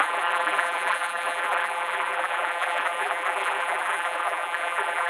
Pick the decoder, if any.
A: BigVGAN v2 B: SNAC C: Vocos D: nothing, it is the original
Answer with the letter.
A